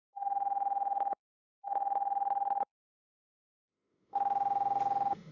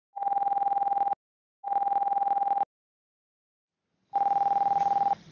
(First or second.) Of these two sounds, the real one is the second